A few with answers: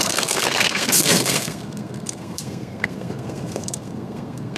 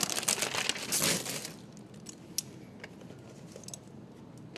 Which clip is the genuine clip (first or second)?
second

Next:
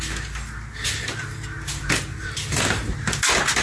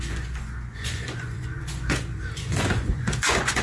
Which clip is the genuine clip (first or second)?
first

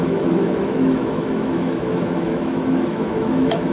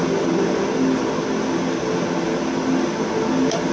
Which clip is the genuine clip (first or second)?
second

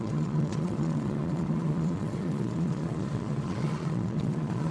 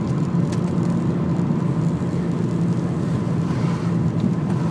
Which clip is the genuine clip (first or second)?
second